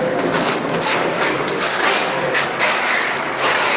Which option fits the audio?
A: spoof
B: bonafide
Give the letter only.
A